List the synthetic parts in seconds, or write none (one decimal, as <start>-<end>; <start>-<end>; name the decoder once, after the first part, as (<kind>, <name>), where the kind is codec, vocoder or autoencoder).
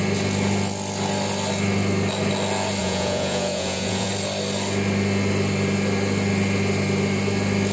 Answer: 2.8-4.1 (vocoder, Vocos)